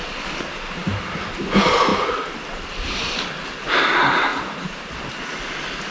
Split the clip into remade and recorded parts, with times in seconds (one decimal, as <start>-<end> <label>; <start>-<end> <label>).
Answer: 0.0-0.9 recorded; 0.9-1.4 remade; 1.4-1.9 recorded; 1.9-2.4 remade; 2.4-5.9 recorded